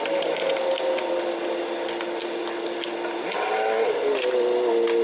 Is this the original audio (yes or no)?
yes